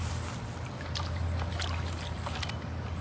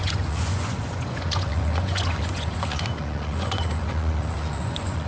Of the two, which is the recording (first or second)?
first